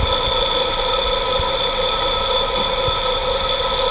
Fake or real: real